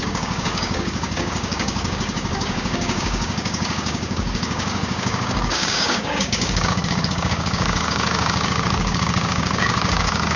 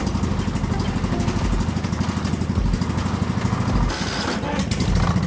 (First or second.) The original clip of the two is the second